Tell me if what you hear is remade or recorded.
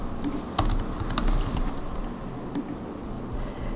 recorded